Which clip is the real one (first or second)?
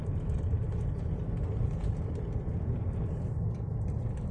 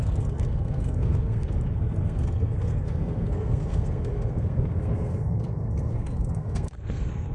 first